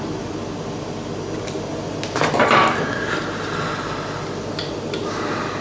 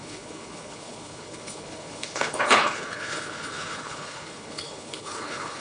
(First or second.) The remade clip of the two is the second